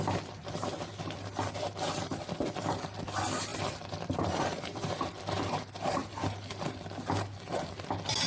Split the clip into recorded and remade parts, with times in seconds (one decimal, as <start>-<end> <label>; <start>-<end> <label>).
0.0-3.5 recorded; 3.5-5.1 remade; 5.1-8.3 recorded